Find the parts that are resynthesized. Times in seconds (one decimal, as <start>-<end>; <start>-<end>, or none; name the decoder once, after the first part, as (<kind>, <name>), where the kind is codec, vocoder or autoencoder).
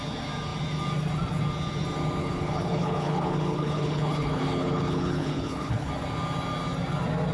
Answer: 2.2-5.9 (codec, HILCodec)